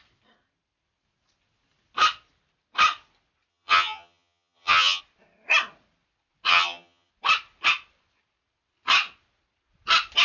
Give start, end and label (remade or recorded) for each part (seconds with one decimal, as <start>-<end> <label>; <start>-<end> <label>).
0.0-3.5 recorded; 3.5-5.0 remade; 5.0-6.5 recorded; 6.5-7.1 remade; 7.1-10.2 recorded